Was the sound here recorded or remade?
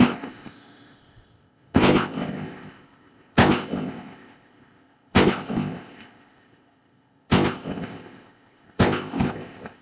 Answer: remade